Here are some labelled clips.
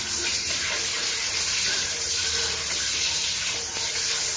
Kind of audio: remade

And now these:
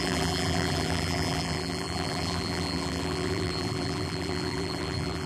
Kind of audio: remade